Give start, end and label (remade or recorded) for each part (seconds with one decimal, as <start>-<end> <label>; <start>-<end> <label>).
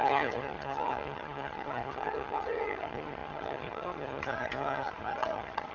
0.0-5.7 remade